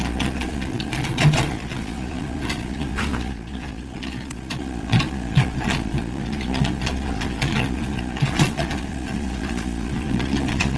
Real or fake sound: fake